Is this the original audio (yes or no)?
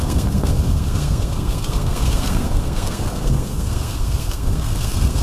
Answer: no